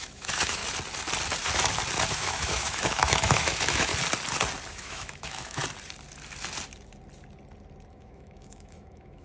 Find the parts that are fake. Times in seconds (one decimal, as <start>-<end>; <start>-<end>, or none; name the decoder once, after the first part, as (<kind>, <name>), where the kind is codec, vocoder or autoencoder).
0.0-0.6 (autoencoder, DAC-VAE); 2.1-3.9; 4.7-5.6; 7.9-9.2